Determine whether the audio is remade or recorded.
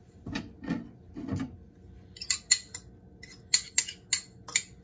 recorded